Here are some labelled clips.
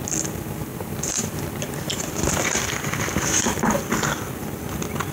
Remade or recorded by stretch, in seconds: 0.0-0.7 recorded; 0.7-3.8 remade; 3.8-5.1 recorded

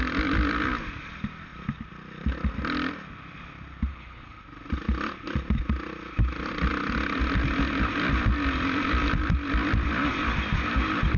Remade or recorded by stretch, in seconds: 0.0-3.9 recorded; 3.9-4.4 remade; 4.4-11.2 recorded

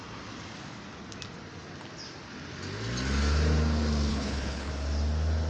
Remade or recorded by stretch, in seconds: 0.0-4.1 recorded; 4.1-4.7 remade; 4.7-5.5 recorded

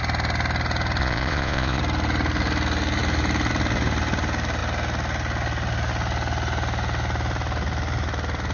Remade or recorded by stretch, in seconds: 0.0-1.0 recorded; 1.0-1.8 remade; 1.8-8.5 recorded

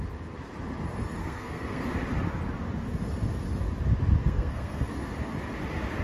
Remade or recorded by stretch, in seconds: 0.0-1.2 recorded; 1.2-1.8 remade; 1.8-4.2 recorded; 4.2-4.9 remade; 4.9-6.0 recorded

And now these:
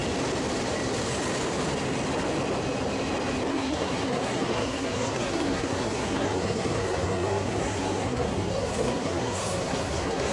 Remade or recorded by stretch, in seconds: 0.0-3.5 recorded; 3.5-10.3 remade

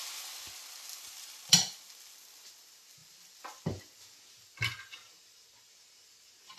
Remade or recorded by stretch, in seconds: 0.0-6.6 recorded

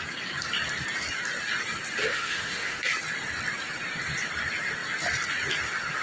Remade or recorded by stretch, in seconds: 0.0-2.0 recorded; 2.0-2.8 remade; 2.8-6.0 recorded